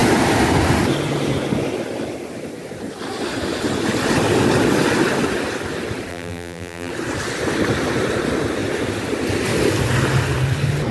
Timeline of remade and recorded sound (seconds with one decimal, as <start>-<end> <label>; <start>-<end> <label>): 0.0-6.1 recorded; 6.1-6.9 remade; 6.9-10.9 recorded